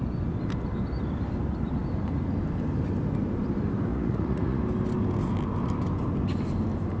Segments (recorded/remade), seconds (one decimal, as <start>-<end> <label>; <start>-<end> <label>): 0.0-3.9 recorded; 3.9-4.6 remade; 4.6-7.0 recorded